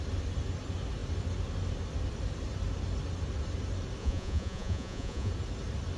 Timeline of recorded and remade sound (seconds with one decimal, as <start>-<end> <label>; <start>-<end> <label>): 0.0-4.0 recorded; 4.0-5.3 remade; 5.3-6.0 recorded